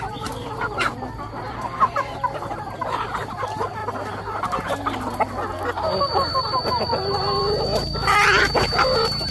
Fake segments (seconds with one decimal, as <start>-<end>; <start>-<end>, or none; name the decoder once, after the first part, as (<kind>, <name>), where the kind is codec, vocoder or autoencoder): 0.0-3.8 (vocoder, BigVGAN v2); 8.4-9.3